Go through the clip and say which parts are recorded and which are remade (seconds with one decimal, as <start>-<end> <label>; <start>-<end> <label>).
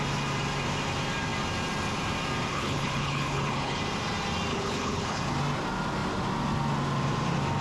0.0-2.5 recorded; 2.5-3.8 remade; 3.8-4.5 recorded; 4.5-5.2 remade; 5.2-7.6 recorded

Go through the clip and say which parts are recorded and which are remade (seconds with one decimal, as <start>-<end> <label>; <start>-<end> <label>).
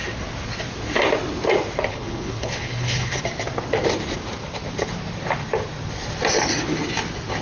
0.0-1.9 recorded; 1.9-3.2 remade; 3.2-7.4 recorded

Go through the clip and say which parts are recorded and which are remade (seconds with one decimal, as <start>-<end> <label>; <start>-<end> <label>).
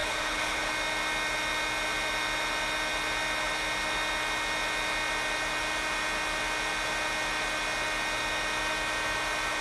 0.0-0.7 remade; 0.7-9.6 recorded